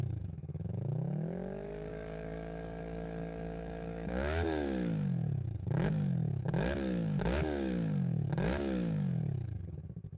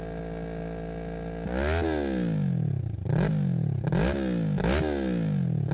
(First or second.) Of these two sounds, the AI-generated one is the first